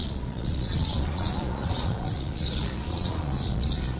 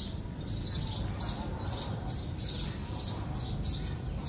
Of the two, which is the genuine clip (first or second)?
second